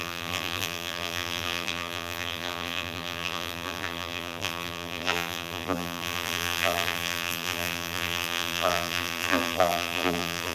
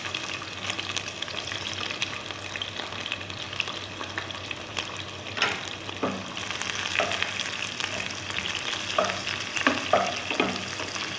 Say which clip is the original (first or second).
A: second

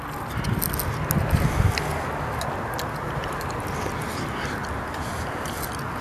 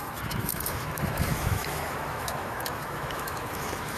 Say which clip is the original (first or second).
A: first